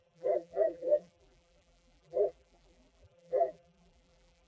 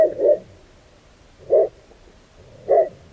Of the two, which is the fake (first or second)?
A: first